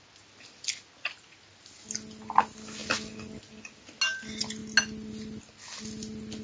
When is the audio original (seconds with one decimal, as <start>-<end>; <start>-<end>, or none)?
0.0-6.4